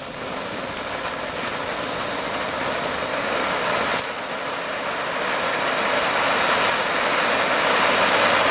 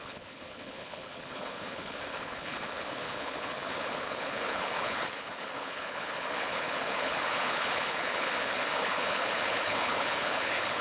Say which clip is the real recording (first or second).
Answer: first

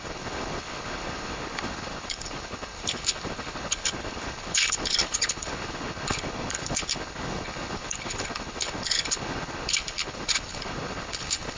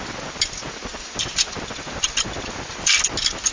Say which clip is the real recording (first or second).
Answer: second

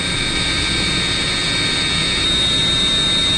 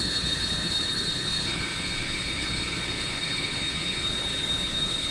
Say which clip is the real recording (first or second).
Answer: first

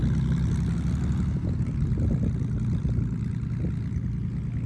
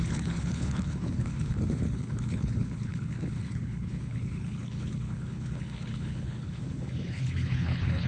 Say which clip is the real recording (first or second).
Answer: first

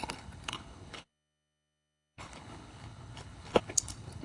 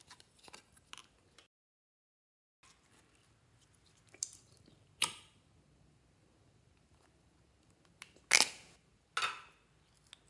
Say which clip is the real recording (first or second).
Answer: second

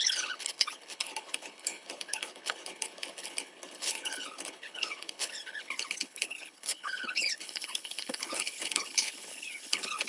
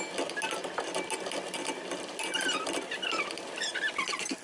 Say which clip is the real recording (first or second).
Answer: second